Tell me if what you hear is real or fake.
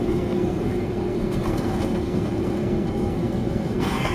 fake